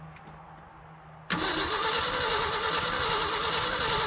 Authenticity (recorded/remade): recorded